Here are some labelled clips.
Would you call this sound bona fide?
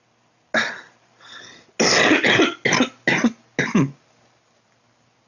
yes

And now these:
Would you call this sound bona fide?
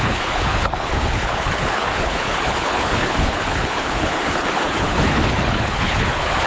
no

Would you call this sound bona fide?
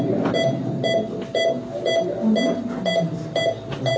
yes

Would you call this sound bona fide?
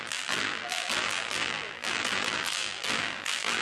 no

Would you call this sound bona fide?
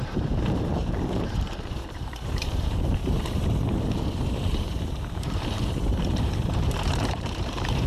no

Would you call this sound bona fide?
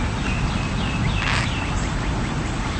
yes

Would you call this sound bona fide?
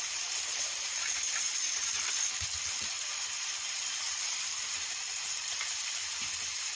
no